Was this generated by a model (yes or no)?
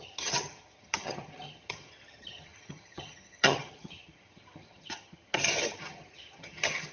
yes